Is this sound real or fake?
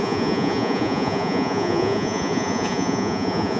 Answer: fake